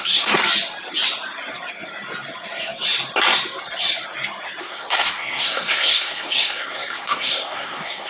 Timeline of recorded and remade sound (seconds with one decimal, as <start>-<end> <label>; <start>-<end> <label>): 0.0-0.4 remade; 0.4-4.6 recorded; 4.6-8.1 remade